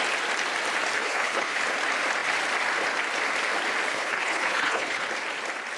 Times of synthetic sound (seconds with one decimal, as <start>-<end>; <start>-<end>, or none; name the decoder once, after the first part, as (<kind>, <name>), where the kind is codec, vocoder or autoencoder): 1.0-1.6 (codec, HILCodec); 3.9-5.1